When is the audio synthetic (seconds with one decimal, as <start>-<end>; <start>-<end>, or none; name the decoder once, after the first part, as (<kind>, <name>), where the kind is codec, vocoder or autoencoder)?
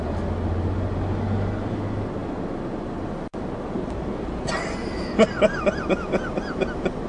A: none